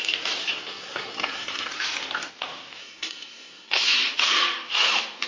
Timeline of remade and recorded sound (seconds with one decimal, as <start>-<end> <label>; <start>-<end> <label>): 0.0-0.4 recorded; 0.4-1.7 remade; 1.7-2.8 recorded; 2.8-4.1 remade; 4.1-5.3 recorded